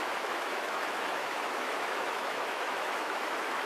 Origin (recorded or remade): remade